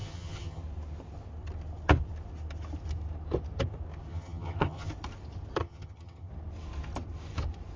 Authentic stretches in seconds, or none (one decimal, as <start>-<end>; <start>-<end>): 0.6-4.1; 4.9-5.6; 6.3-7.8